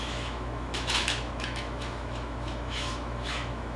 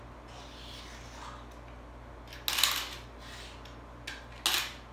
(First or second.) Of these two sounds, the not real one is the first